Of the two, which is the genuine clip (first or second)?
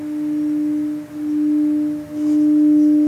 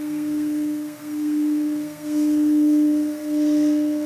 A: first